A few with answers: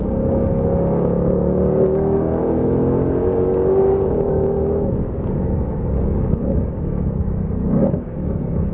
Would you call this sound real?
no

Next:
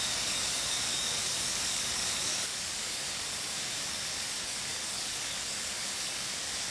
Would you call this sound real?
no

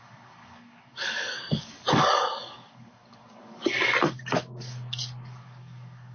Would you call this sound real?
no